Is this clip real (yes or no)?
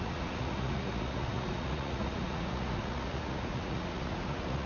no